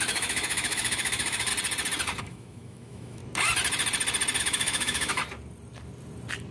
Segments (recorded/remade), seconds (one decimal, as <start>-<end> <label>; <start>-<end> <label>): 0.0-1.5 remade; 1.5-2.2 recorded; 2.2-3.2 remade; 3.2-4.4 recorded; 4.4-5.2 remade; 5.2-6.5 recorded